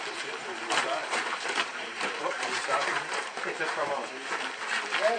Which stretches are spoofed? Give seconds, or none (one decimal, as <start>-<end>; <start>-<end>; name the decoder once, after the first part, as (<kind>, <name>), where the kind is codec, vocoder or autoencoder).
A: 1.0-4.1 (vocoder, BigVGAN v2)